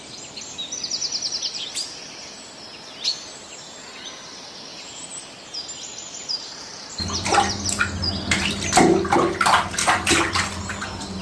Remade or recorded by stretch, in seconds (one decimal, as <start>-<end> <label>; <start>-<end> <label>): 0.0-4.7 recorded; 4.7-5.3 remade; 5.3-11.2 recorded